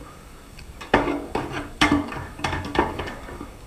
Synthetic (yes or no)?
yes